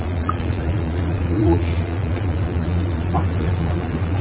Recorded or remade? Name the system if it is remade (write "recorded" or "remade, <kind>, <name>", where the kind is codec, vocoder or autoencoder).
remade, vocoder, Vocos